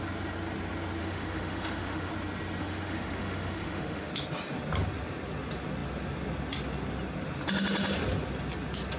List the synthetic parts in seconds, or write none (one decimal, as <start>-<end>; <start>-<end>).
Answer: 1.0-2.1; 2.6-4.1

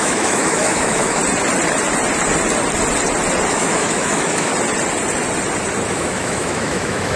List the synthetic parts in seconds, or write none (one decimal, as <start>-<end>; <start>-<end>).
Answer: 0.0-1.2; 3.5-4.5; 5.9-7.2

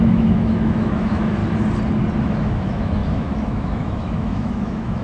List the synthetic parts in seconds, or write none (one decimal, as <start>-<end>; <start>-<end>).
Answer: 0.0-1.4; 2.2-5.0

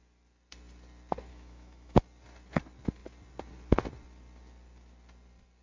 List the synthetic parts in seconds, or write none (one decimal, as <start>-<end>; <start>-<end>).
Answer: 1.3-2.0

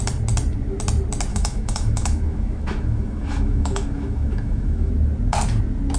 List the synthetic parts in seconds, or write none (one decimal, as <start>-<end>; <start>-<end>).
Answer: 1.3-4.9

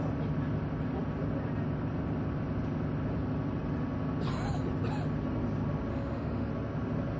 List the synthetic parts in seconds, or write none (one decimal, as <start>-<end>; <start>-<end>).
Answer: 5.9-6.5

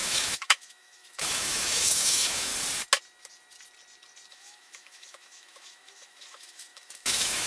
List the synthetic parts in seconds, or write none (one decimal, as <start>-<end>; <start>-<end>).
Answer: 0.0-2.5; 4.3-7.5